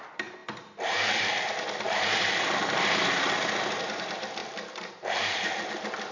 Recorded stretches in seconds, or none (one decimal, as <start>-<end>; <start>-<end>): 0.0-6.1